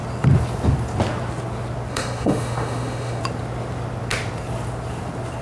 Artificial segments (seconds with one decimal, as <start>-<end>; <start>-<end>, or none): 1.9-3.2